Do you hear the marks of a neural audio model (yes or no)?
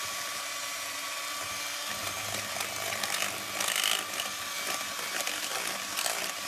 no